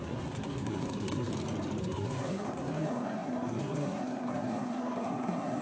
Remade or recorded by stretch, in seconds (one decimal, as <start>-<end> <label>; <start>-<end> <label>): 0.0-1.3 remade; 1.3-1.8 recorded; 1.8-5.6 remade